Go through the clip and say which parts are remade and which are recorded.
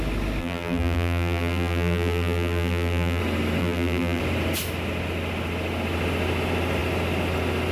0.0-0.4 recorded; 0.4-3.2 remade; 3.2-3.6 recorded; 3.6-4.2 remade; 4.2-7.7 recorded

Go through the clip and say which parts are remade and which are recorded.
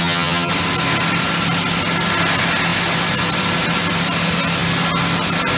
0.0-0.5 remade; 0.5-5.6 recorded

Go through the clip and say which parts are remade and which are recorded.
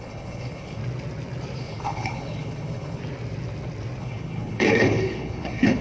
0.0-0.8 remade; 0.8-1.6 recorded; 1.6-3.0 remade; 3.0-4.0 recorded; 4.0-5.8 remade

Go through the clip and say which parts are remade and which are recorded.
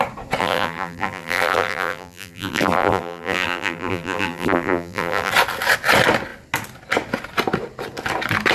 0.0-0.4 recorded; 0.4-5.3 remade; 5.3-8.5 recorded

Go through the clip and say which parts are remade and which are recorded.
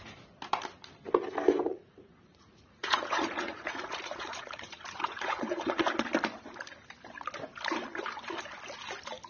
0.0-1.7 recorded; 1.7-5.7 remade; 5.7-9.3 recorded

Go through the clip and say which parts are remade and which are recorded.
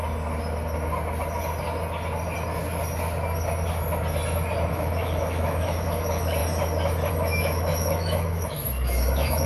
0.0-4.7 recorded; 4.7-6.4 remade; 6.4-7.1 recorded; 7.1-9.5 remade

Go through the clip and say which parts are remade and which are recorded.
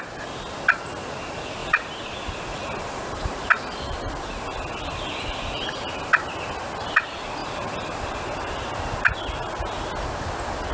0.0-10.7 recorded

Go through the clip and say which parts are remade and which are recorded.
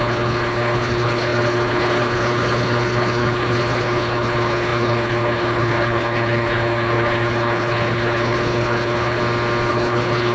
0.0-9.2 remade; 9.2-9.7 recorded; 9.7-10.3 remade